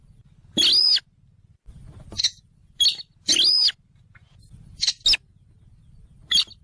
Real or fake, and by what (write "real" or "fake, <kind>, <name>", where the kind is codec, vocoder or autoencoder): real